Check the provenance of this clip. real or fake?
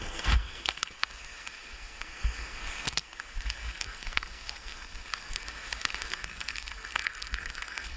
fake